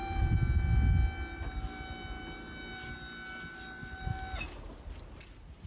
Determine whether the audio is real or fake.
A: real